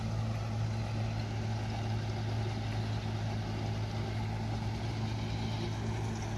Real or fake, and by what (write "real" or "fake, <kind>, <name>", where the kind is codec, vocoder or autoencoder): real